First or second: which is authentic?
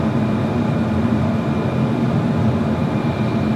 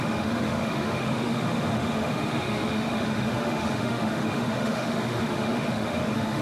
first